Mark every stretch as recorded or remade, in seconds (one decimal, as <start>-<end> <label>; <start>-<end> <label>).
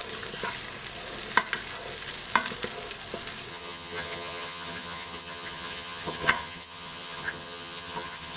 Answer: 0.0-3.5 recorded; 3.5-8.4 remade